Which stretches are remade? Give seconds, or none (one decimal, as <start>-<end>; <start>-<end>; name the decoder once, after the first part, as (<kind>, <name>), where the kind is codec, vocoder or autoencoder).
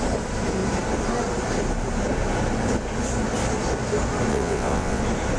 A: 4.3-5.0 (vocoder, WaveNeXt)